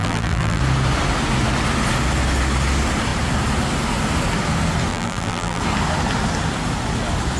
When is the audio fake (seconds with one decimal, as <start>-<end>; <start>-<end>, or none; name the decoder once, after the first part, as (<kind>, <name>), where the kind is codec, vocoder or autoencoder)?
0.0-0.6 (vocoder, BigVGAN v2); 4.9-5.6

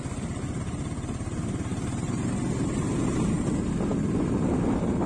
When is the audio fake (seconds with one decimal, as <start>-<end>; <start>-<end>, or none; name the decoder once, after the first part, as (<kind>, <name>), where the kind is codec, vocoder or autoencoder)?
1.7-2.4 (vocoder, BigVGAN v2)

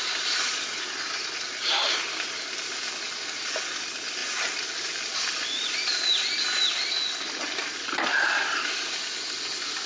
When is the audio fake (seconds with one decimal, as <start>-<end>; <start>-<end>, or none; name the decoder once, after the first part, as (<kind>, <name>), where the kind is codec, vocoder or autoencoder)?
none

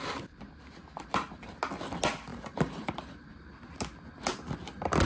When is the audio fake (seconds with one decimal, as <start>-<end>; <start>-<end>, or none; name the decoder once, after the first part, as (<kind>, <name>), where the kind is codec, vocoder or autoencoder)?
0.6-1.5 (vocoder, BigVGAN v2); 2.3-3.4

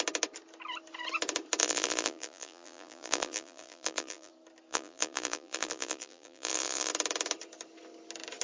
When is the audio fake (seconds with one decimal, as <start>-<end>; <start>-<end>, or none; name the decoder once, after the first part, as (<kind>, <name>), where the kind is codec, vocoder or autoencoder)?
1.6-4.3 (vocoder, BigVGAN v2); 4.7-6.9